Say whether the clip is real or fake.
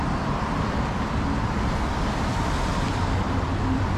fake